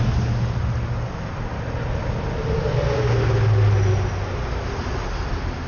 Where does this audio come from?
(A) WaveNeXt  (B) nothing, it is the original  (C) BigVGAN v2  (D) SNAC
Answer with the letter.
B